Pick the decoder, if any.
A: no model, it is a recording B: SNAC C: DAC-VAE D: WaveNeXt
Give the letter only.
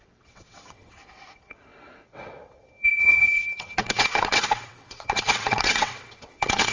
D